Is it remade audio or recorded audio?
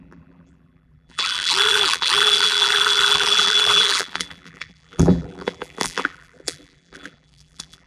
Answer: remade